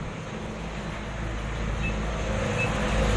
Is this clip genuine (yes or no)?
yes